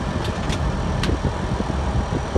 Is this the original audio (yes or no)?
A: yes